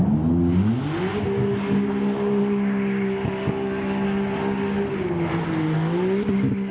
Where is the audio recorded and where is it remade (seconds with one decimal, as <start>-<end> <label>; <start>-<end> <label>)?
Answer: 0.0-6.7 recorded